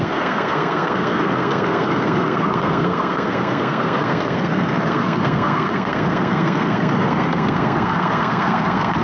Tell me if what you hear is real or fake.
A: fake